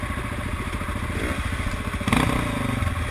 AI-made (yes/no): no